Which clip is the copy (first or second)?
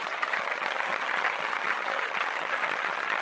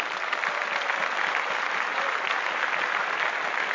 first